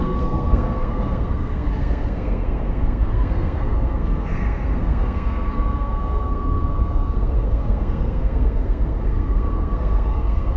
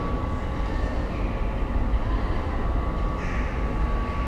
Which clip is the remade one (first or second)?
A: first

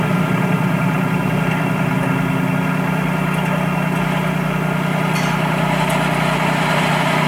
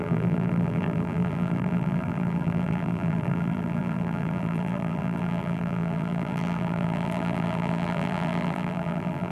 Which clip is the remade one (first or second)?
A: second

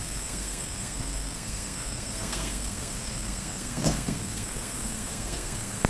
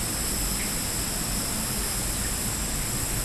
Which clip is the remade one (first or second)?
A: first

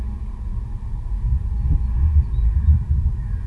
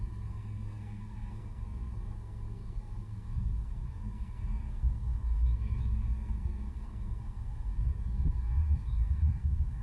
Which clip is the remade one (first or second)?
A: second